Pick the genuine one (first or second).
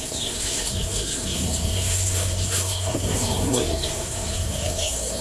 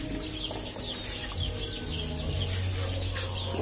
second